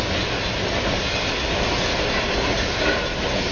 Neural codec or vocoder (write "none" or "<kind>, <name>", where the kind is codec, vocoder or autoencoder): none